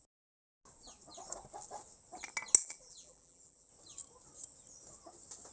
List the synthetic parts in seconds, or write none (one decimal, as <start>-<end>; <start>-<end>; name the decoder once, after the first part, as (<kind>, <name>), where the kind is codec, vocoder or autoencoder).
2.6-3.7 (vocoder, BigVGAN v2)